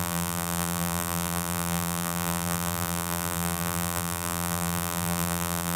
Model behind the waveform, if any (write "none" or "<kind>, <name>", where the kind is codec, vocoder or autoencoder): vocoder, BigVGAN v2